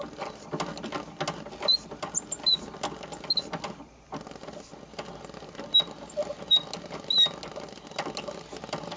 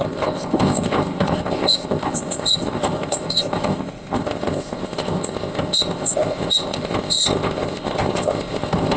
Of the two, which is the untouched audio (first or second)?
first